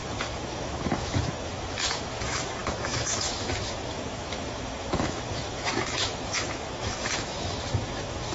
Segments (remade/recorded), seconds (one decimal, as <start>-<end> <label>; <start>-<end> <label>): 0.0-8.3 remade